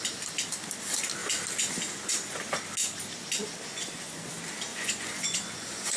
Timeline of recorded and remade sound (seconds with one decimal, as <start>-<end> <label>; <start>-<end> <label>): 0.0-3.7 recorded; 3.7-4.2 remade; 4.2-4.7 recorded; 4.7-6.0 remade

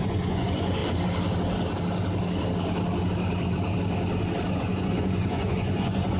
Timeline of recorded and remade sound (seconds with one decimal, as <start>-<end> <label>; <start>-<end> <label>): 0.0-0.8 remade; 0.8-4.5 recorded; 4.5-6.2 remade

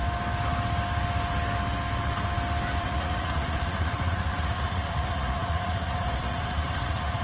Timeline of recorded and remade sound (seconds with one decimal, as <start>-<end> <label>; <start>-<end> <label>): 0.0-2.8 recorded; 2.8-7.2 remade